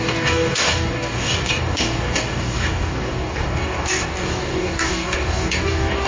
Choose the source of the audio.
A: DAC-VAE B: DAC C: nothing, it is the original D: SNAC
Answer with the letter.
B